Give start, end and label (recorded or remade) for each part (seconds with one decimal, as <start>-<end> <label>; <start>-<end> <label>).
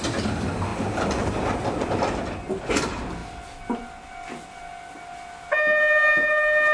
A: 0.0-6.7 recorded